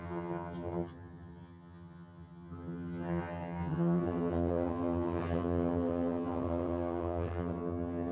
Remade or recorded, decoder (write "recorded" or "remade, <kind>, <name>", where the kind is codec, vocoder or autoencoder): remade, vocoder, HiFi-GAN